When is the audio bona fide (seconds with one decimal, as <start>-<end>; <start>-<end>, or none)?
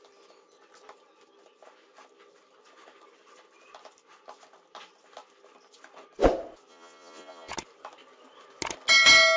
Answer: 0.0-6.7; 7.5-9.4